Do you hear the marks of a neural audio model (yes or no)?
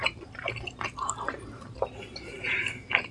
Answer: yes